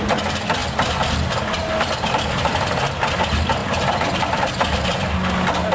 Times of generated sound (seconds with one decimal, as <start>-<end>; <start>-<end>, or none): none